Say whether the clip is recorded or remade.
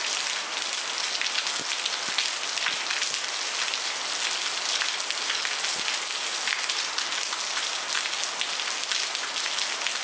recorded